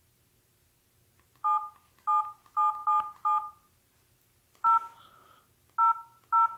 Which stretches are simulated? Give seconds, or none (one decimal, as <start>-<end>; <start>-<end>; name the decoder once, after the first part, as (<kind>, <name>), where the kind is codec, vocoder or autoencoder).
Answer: none